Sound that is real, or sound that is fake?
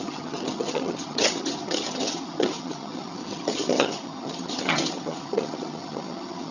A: fake